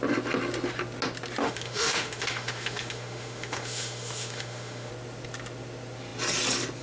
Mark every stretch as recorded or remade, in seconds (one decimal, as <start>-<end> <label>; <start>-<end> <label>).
0.0-1.4 recorded; 1.4-4.9 remade; 4.9-6.8 recorded

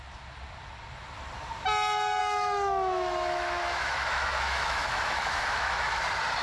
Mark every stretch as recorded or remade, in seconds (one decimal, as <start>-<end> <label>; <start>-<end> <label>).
0.0-2.2 recorded; 2.2-6.0 remade; 6.0-6.4 recorded

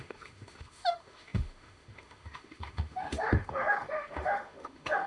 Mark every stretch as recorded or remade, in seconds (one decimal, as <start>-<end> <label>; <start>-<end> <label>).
0.0-5.1 remade

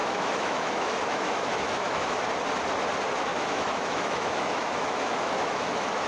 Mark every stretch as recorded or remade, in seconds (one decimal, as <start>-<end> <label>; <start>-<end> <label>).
0.0-2.2 remade; 2.2-3.3 recorded; 3.3-6.1 remade

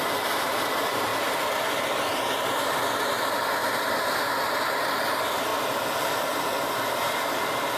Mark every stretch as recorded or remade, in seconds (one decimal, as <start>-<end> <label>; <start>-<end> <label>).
0.0-7.8 recorded

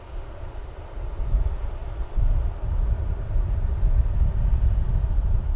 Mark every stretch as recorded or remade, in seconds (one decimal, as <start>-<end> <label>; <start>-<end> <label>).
0.0-5.6 recorded